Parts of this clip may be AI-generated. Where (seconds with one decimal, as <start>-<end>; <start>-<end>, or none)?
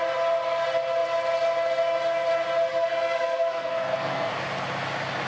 2.7-4.3